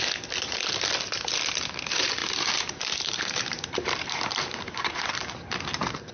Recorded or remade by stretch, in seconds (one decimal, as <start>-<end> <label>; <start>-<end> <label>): 0.0-2.2 recorded; 2.2-6.1 remade